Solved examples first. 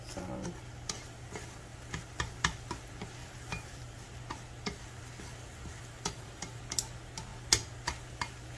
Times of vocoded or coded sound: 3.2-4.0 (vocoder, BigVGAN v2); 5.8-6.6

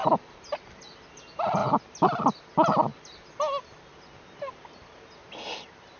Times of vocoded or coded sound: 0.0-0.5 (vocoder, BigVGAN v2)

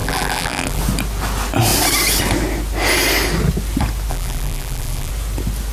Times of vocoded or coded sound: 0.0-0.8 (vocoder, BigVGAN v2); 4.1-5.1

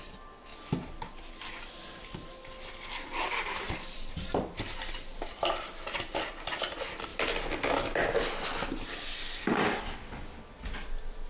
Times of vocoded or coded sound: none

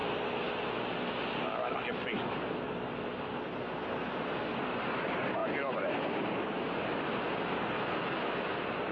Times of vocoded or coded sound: 4.4-5.4 (vocoder, BigVGAN v2); 6.0-8.9